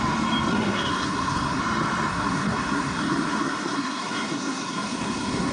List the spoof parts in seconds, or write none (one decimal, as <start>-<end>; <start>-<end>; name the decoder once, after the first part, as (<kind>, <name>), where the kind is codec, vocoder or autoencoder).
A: 0.5-1.6 (codec, SNAC); 2.1-5.5